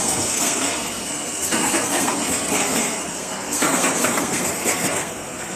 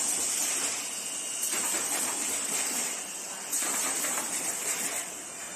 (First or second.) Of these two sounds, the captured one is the second